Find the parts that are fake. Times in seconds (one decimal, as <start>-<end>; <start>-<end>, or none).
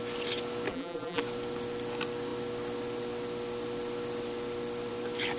0.7-1.2